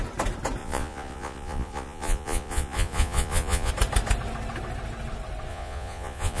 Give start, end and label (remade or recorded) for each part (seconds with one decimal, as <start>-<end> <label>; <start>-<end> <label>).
0.0-0.6 recorded; 0.6-3.7 remade; 3.7-5.5 recorded; 5.5-6.4 remade